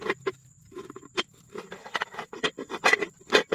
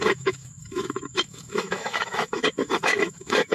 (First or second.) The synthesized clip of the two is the second